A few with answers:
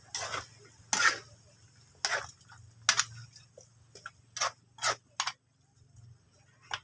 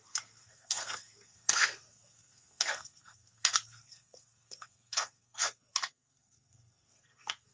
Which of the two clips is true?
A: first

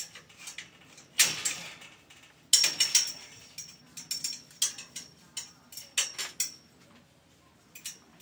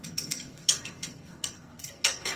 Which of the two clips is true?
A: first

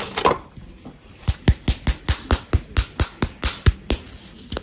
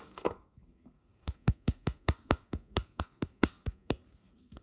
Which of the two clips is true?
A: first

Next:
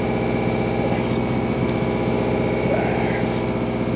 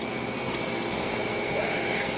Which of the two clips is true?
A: first